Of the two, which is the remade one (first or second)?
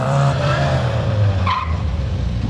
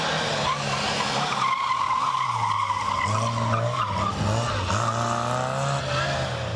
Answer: first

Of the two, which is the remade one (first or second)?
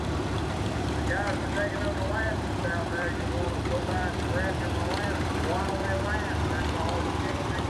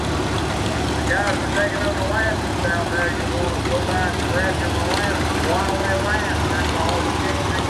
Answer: first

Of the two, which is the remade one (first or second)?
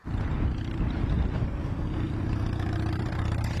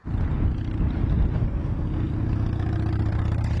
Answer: first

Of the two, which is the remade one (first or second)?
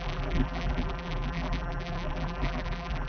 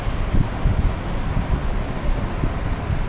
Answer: first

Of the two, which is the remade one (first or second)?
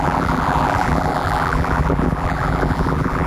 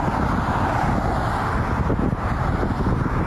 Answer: first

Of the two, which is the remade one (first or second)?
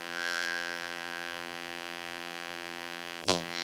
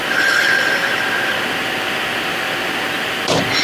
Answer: first